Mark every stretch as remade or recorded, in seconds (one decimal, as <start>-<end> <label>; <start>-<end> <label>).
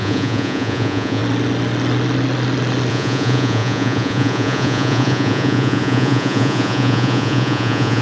0.0-1.2 remade; 1.2-2.9 recorded; 2.9-8.0 remade